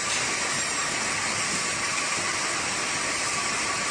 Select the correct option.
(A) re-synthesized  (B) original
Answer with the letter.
B